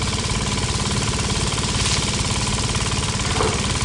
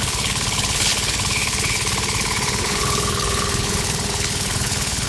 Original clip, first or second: first